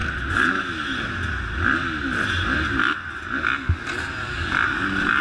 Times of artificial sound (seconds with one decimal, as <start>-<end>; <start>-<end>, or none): none